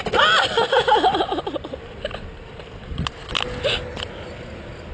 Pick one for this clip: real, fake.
real